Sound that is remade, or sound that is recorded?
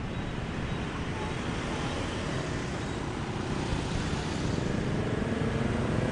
recorded